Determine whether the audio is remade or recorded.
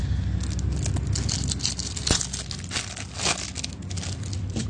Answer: recorded